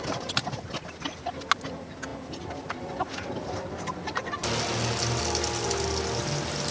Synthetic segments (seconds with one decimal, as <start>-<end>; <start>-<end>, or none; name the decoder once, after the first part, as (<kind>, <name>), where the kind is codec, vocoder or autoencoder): none